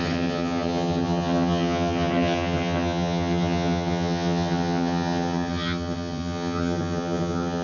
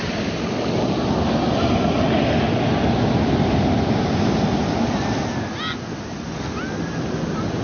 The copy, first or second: first